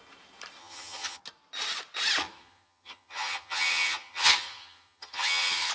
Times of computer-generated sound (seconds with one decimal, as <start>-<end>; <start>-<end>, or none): 0.6-1.2; 2.2-5.7